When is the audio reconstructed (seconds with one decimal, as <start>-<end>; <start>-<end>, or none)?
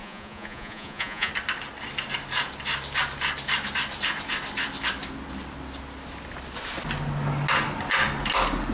0.0-1.3